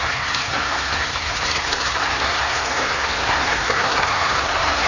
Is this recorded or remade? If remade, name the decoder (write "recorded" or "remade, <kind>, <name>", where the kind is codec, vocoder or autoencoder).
remade, codec, SNAC